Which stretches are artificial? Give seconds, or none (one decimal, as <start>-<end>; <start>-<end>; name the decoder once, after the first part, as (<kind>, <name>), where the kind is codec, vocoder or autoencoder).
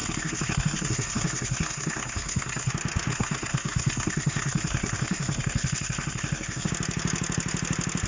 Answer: 0.0-2.7 (codec, SNAC); 3.1-6.7